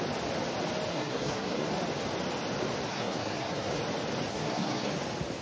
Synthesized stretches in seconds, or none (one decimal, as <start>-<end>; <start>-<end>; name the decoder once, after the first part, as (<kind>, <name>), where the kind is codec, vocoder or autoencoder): 0.9-1.7 (codec, SNAC); 2.9-3.8; 4.3-4.9